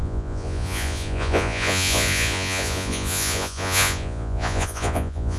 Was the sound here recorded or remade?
remade